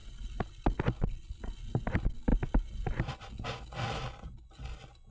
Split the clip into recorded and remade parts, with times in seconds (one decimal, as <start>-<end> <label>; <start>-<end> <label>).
0.0-5.1 recorded